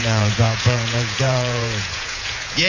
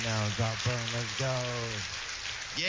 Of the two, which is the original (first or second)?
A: second